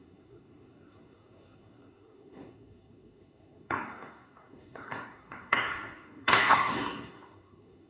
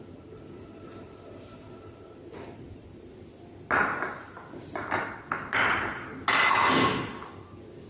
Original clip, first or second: second